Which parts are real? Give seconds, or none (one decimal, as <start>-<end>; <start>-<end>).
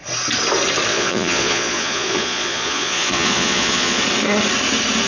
0.0-0.9; 4.0-5.1